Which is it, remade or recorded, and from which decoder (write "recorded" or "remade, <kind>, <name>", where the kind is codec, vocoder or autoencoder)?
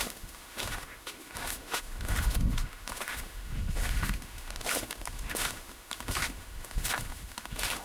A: remade, autoencoder, DAC-VAE